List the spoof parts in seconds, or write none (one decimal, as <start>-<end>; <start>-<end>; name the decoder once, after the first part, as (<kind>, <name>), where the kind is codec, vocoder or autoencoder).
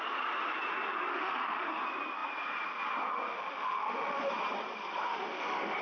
1.1-1.8 (autoencoder, DAC-VAE); 3.3-4.3; 5.1-5.8